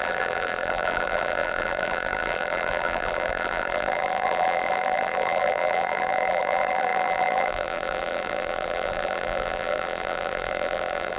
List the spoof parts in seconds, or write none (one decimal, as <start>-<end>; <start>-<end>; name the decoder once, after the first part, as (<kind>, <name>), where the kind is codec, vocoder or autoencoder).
0.0-11.2 (vocoder, BigVGAN v2)